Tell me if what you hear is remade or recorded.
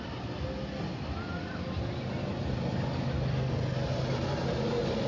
recorded